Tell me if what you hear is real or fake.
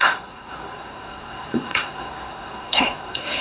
fake